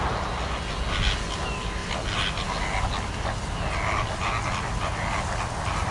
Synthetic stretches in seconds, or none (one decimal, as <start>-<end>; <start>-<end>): none